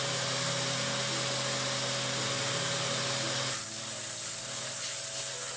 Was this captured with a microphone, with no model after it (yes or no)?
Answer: yes